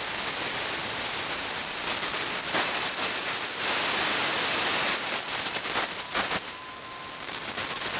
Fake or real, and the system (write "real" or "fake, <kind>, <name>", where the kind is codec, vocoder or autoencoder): real